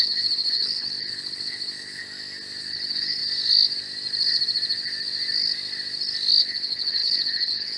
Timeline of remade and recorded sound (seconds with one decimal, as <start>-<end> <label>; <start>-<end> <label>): 0.0-2.0 remade; 2.0-2.6 recorded; 2.6-3.2 remade; 3.2-6.4 recorded; 6.4-7.8 remade